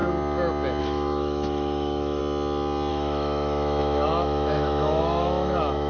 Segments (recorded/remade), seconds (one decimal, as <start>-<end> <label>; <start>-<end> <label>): 0.0-0.8 recorded; 0.8-2.2 remade; 2.2-2.9 recorded; 2.9-5.9 remade